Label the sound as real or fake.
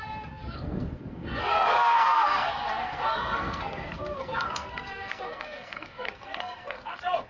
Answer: fake